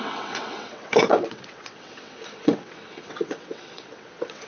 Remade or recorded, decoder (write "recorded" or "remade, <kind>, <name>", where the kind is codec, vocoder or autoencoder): remade, vocoder, WaveNeXt